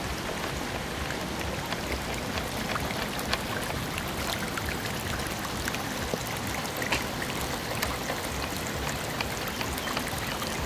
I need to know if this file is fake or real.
real